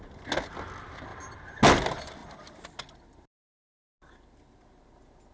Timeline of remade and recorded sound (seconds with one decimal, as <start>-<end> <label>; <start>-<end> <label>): 0.0-5.3 recorded